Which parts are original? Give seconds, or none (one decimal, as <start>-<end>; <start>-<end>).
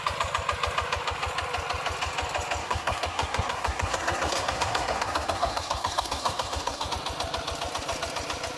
0.0-2.6; 6.9-8.6